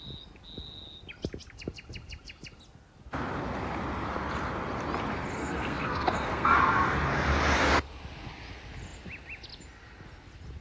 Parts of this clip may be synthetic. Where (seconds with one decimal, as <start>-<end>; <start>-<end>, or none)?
5.4-6.6